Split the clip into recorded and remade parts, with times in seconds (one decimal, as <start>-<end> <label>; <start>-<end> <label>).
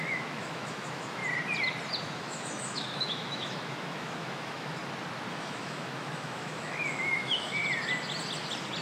0.0-1.2 remade; 1.2-2.0 recorded; 2.0-4.8 remade; 4.8-5.3 recorded; 5.3-7.6 remade; 7.6-8.8 recorded